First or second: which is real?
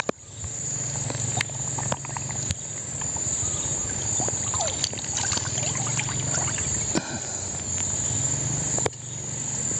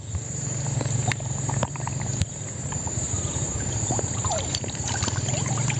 first